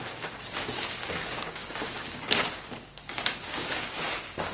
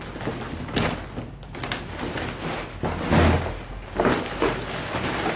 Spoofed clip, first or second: first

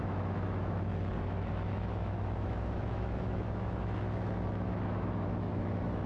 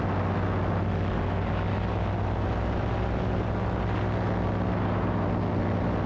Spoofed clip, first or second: first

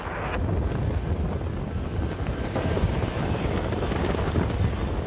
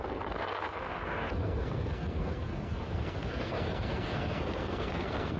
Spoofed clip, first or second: second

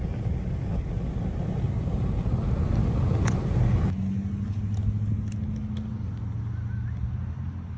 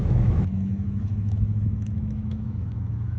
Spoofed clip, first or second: second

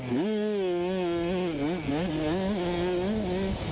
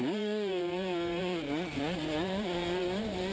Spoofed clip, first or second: second